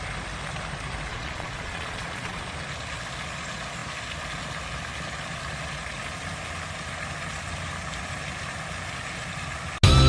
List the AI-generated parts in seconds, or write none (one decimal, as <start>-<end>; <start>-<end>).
1.1-2.4